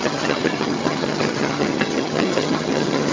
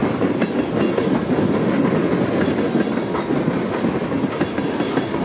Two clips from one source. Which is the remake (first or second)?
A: first